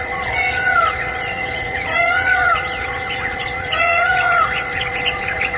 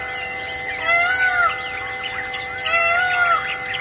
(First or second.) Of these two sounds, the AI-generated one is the first